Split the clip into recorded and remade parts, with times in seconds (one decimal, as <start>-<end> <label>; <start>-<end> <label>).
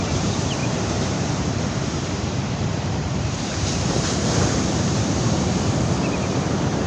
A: 0.0-6.9 remade